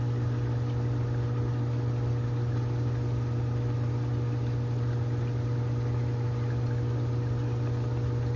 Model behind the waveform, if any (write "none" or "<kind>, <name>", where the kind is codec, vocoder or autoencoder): none